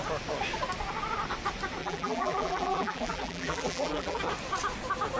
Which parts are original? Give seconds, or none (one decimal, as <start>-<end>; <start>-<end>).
0.0-1.8; 4.2-5.2